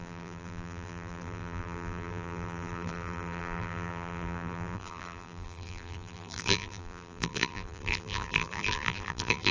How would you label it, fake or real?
fake